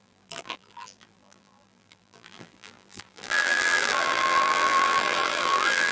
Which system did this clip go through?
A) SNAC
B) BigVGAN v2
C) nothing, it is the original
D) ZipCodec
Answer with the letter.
B